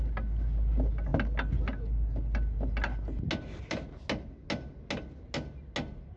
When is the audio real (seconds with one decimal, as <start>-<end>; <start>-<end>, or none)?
0.0-6.2